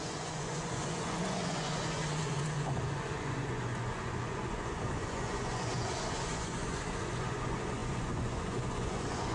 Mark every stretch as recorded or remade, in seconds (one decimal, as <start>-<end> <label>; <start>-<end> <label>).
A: 0.0-9.3 remade